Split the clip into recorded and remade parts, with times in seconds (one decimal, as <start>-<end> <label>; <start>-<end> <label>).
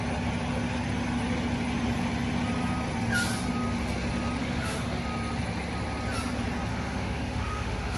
0.0-4.4 recorded; 4.4-5.0 remade; 5.0-6.7 recorded; 6.7-8.0 remade